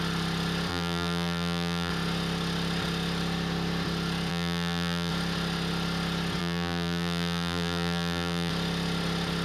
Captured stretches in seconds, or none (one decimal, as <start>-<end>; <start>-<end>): 0.0-0.7; 1.9-4.3; 5.1-6.4; 8.5-9.4